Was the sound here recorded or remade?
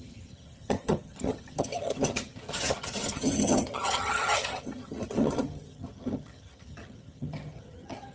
remade